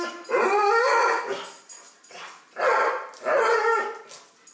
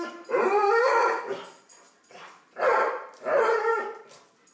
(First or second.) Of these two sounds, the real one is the first